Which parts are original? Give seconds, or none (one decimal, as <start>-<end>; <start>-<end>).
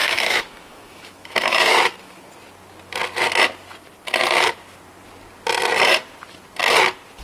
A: 2.2-7.2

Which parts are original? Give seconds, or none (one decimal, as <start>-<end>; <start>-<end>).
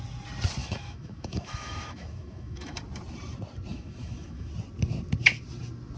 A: 0.0-0.6; 2.8-3.7; 4.5-6.0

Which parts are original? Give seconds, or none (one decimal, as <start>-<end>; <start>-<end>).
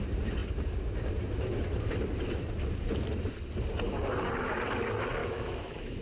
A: 0.0-5.2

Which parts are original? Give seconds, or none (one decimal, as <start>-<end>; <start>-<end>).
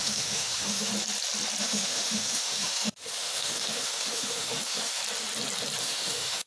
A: 0.9-1.6; 5.0-5.8